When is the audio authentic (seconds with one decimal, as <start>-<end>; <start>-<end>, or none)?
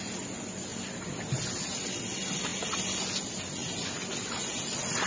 0.0-5.1